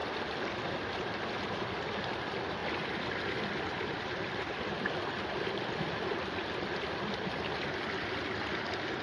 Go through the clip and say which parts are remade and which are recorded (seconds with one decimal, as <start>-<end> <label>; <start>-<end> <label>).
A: 0.0-0.6 remade; 0.6-2.6 recorded; 2.6-6.9 remade; 6.9-9.0 recorded